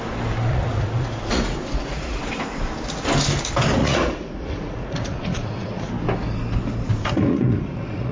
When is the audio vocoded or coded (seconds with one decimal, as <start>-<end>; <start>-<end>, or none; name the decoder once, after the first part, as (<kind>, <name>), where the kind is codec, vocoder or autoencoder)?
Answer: 0.5-2.2 (vocoder, Vocos); 3.8-5.9; 7.0-8.1